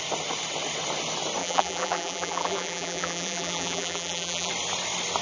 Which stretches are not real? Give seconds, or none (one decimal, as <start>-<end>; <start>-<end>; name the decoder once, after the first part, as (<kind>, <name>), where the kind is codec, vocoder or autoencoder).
1.4-4.5 (vocoder, BigVGAN v2)